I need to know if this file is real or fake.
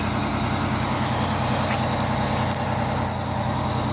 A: real